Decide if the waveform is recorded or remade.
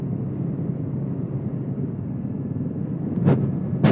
recorded